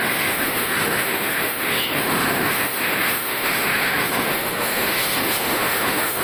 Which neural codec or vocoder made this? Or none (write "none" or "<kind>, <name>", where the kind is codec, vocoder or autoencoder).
autoencoder, DAC-VAE